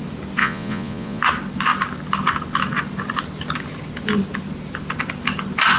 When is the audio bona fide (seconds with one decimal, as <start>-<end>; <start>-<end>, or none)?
0.0-0.4; 1.2-5.8